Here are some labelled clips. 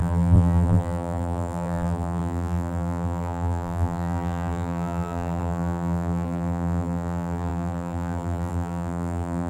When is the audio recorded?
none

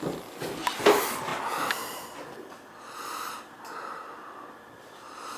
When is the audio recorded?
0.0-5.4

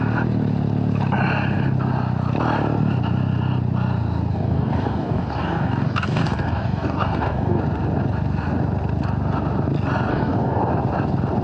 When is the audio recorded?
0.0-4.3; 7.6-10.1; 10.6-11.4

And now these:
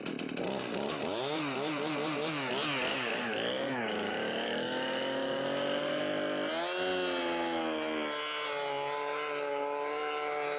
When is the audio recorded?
0.0-2.9; 6.0-10.6

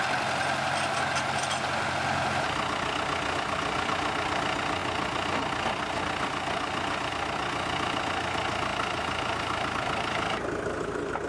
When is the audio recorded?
0.0-11.3